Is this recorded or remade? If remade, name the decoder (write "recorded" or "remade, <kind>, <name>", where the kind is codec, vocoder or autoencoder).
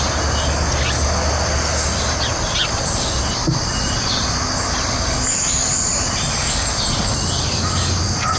recorded